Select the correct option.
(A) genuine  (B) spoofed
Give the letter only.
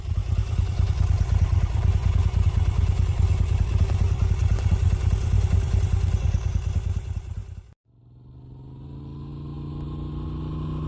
A